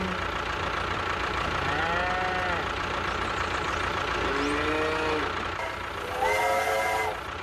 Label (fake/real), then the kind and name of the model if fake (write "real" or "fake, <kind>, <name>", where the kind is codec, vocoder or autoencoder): real